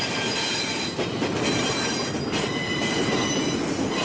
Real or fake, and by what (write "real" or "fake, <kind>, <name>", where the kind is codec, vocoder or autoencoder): real